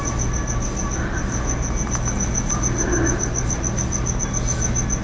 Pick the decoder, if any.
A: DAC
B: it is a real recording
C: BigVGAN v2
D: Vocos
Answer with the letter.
B